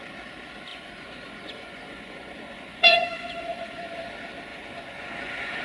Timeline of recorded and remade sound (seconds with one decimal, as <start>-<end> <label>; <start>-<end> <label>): 0.0-0.7 recorded; 0.7-4.1 remade; 4.1-4.5 recorded; 4.5-5.6 remade